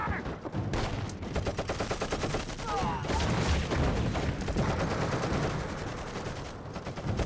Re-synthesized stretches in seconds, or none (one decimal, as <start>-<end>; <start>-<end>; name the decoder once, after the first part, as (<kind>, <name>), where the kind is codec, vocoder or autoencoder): 5.9-7.3 (vocoder, BigVGAN v2)

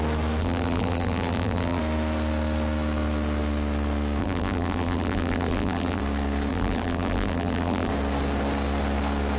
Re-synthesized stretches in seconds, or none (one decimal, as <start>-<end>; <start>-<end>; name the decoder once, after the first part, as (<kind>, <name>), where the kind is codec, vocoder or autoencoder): 0.4-1.8 (vocoder, BigVGAN v2); 4.2-6.0; 6.5-7.9